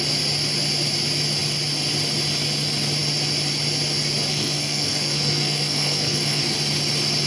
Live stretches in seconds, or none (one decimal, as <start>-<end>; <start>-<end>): 0.0-4.3; 6.4-7.3